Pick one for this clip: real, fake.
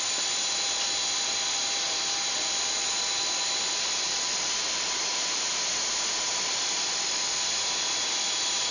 real